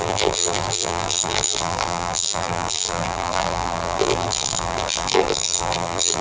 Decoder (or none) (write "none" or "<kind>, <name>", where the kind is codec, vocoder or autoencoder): vocoder, BigVGAN v2